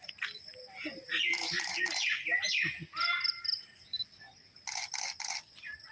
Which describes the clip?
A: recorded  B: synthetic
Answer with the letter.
A